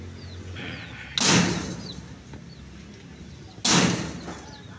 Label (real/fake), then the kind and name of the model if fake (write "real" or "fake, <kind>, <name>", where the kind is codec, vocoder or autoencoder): real